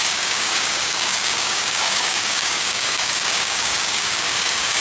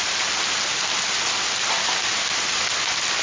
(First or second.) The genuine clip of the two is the second